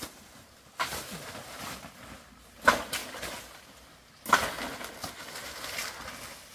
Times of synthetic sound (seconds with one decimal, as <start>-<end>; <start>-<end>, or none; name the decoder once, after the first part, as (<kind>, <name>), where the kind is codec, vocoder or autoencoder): none